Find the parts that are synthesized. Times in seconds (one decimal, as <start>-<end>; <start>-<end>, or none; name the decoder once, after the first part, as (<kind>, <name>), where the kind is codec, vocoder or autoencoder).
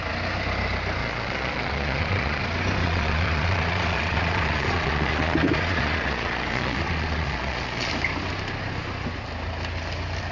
1.0-2.4 (vocoder, Vocos); 2.8-7.9